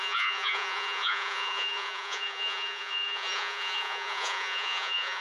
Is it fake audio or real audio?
fake